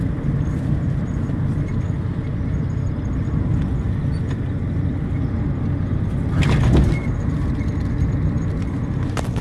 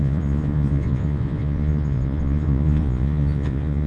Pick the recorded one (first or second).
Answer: first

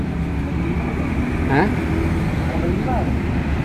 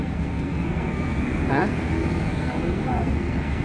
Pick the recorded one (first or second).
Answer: first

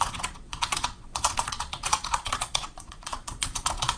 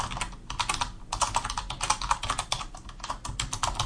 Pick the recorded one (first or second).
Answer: second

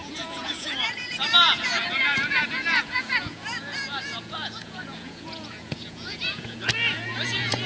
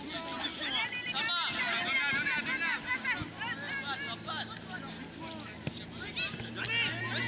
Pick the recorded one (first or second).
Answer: second